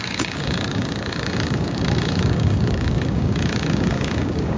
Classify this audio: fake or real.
fake